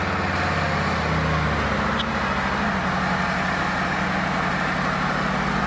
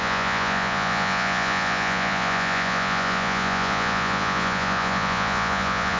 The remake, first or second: second